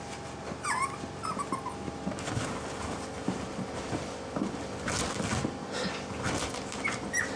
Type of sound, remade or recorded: recorded